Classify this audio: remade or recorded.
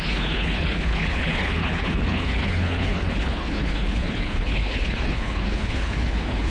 remade